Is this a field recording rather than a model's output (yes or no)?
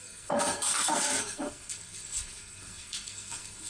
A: no